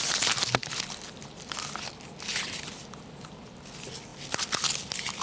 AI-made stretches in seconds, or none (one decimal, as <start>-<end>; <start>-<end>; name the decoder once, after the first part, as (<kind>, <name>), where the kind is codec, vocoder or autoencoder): 0.0-5.2 (vocoder, BigVGAN v2)